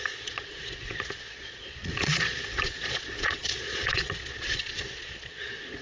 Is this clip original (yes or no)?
no